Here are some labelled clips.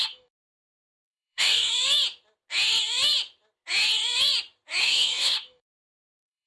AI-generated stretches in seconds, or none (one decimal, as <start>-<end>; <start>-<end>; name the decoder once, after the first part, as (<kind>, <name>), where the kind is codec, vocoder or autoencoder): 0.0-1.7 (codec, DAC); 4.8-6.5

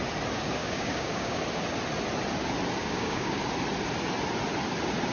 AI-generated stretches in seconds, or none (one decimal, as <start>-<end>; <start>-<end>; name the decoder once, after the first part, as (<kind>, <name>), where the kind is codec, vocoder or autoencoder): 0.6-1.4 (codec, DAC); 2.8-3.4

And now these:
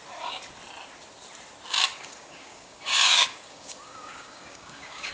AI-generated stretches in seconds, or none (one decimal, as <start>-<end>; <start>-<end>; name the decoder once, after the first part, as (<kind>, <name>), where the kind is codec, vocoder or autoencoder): 1.8-5.1 (codec, DAC)

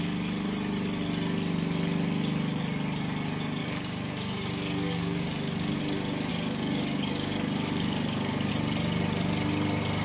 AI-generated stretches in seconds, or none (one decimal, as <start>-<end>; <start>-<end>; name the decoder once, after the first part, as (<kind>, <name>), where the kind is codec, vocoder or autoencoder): 3.6-5.8 (codec, DAC); 6.3-8.5